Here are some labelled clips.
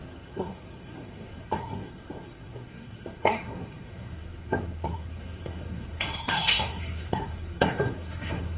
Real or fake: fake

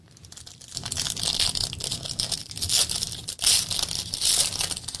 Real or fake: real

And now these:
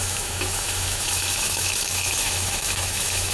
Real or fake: fake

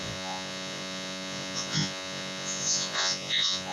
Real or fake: fake